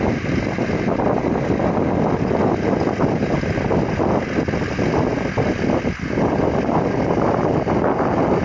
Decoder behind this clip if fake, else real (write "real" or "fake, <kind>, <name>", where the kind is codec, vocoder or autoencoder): real